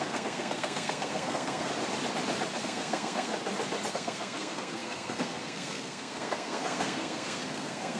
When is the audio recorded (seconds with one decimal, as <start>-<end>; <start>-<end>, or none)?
1.7-2.6; 3.3-3.9